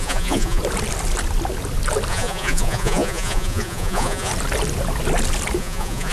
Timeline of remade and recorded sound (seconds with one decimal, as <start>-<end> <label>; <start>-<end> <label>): 0.0-0.6 remade; 0.6-2.1 recorded; 2.1-4.3 remade; 4.3-5.6 recorded; 5.6-6.1 remade

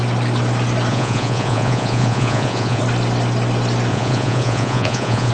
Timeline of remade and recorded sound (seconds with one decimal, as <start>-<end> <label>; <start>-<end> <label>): 0.0-0.9 recorded; 0.9-2.8 remade; 2.8-3.9 recorded; 3.9-5.3 remade

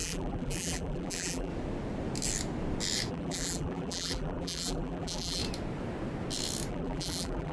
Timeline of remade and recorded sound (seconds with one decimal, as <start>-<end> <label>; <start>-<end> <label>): 0.0-1.5 remade; 1.5-3.1 recorded; 3.1-5.4 remade; 5.4-6.7 recorded; 6.7-7.5 remade

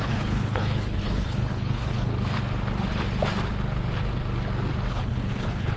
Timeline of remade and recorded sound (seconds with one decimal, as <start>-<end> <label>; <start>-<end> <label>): 0.0-2.1 remade; 2.1-4.9 recorded; 4.9-5.8 remade

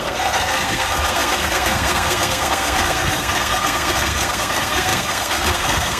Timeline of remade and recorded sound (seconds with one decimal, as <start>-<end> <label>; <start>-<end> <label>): 0.0-6.0 remade

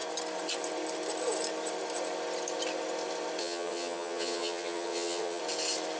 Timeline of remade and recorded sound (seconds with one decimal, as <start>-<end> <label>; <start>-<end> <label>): 0.0-3.4 recorded; 3.4-5.4 remade; 5.4-6.0 recorded

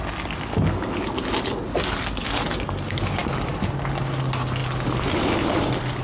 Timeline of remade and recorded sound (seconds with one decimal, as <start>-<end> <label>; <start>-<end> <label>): 0.0-6.0 recorded